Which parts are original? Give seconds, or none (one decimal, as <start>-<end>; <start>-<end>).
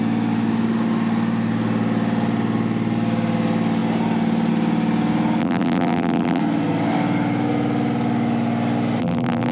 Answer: 0.0-5.4; 6.4-9.0